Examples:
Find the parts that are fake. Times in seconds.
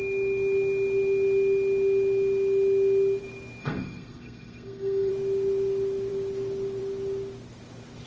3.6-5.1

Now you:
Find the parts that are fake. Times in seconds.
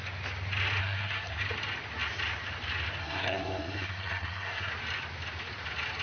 0.8-1.4; 3.0-4.7